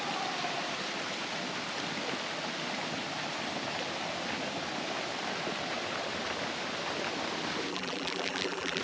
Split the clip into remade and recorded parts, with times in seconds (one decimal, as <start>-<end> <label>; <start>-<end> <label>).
0.0-7.7 recorded; 7.7-8.8 remade